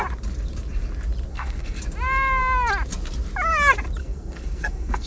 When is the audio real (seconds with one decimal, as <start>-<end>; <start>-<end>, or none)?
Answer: 0.0-1.3; 1.8-4.0